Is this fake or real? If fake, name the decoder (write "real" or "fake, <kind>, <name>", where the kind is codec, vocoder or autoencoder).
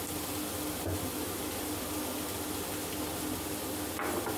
real